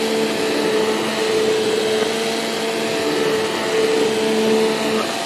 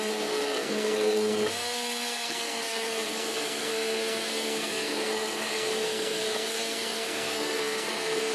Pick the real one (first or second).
first